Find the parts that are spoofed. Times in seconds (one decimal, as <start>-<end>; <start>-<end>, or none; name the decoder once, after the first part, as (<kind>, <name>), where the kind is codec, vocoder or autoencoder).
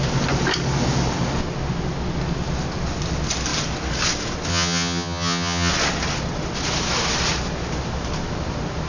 4.5-5.7 (vocoder, HiFi-GAN)